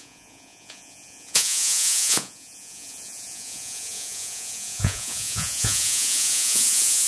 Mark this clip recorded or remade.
remade